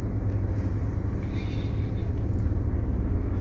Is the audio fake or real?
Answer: real